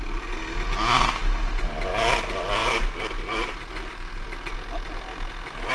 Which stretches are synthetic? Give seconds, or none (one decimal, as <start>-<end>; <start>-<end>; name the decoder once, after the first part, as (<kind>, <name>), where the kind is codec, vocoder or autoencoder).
none